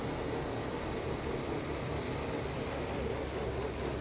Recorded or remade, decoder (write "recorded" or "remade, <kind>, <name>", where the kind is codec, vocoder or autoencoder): recorded